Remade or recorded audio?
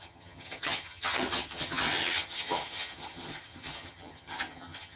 remade